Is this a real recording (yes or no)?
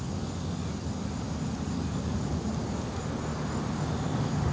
yes